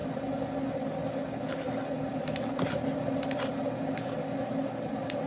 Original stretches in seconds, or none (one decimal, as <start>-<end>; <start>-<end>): 0.0-5.3